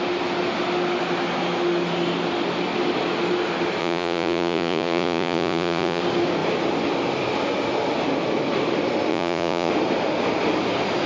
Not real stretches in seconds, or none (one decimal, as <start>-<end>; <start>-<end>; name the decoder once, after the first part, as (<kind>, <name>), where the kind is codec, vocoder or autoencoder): 3.8-6.0 (vocoder, Vocos); 9.1-9.7